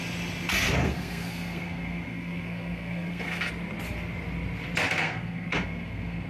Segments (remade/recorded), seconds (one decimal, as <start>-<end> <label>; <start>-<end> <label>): 0.0-0.8 recorded; 0.8-3.5 remade; 3.5-5.0 recorded; 5.0-6.3 remade